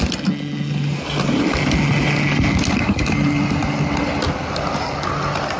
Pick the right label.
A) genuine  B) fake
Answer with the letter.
A